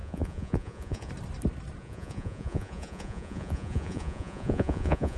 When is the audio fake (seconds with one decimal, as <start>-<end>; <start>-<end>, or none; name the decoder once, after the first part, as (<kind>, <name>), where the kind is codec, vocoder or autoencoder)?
0.0-1.1 (vocoder, Vocos); 1.8-5.2